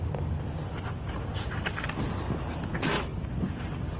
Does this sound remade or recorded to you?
recorded